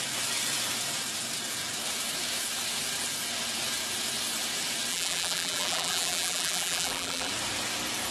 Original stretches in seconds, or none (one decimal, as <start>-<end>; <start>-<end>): 0.0-4.9; 7.3-8.1